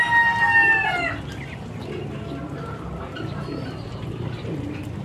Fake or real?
real